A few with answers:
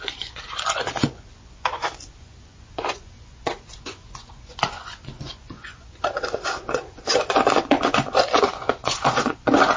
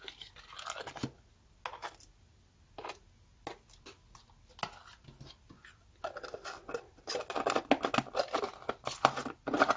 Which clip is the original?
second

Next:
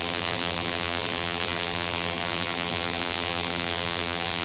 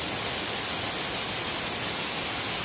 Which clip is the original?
second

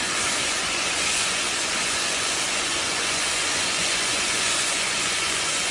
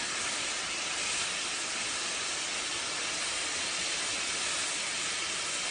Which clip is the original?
second